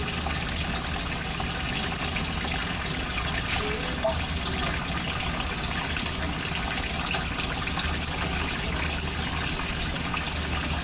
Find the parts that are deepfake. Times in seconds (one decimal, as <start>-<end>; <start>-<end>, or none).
2.6-3.6